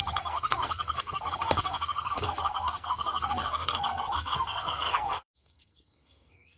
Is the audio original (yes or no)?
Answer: no